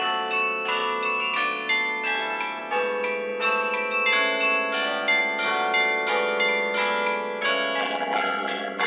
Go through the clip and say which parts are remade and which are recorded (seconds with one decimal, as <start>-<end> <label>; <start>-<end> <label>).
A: 0.0-7.8 recorded; 7.8-8.9 remade